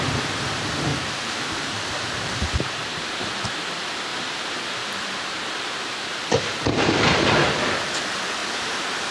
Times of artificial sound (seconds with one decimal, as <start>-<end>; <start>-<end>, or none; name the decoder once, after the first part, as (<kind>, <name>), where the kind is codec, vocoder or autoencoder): 0.9-3.1 (vocoder, BigVGAN v2); 4.1-7.5; 8.4-9.1